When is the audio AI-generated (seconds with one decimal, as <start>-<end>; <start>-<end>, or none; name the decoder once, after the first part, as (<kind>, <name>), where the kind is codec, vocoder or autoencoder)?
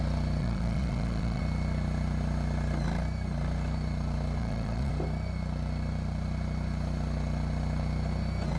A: 0.4-1.4 (vocoder, Vocos); 4.4-4.9